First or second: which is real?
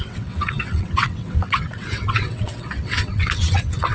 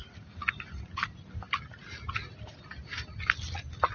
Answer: second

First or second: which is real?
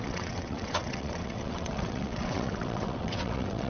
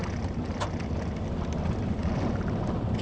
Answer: second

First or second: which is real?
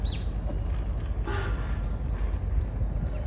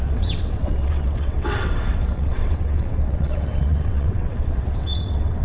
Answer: first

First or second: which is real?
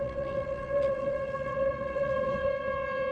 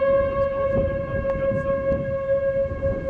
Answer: second